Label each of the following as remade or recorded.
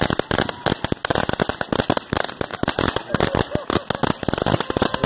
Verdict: recorded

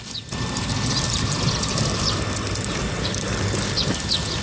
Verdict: recorded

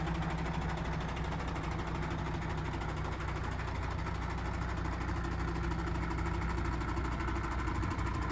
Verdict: recorded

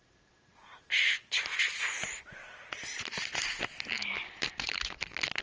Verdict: recorded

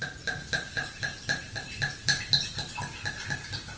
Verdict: recorded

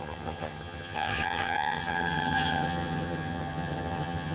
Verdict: remade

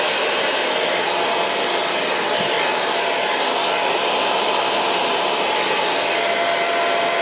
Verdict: recorded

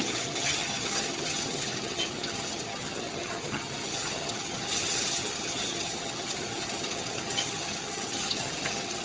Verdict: remade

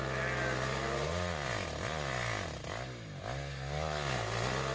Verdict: recorded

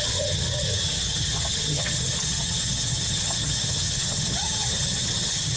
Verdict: remade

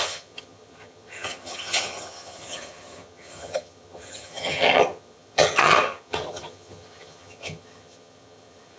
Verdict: remade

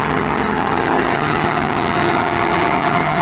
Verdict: remade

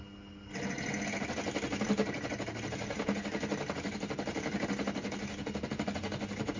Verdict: recorded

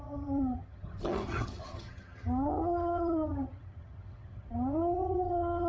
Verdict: remade